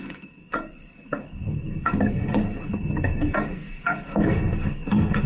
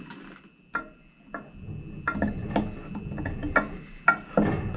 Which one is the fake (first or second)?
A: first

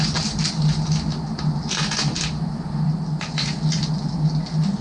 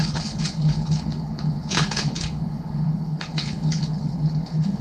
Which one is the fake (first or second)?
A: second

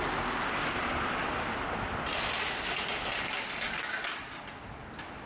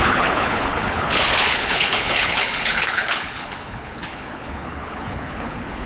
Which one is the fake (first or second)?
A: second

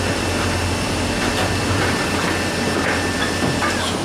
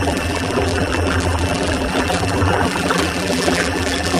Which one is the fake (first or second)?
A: second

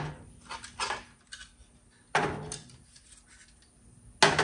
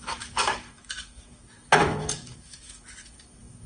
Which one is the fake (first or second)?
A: second